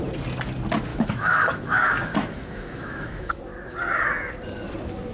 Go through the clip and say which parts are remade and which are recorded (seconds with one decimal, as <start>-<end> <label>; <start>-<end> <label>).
0.0-0.9 recorded; 0.9-3.4 remade; 3.4-5.1 recorded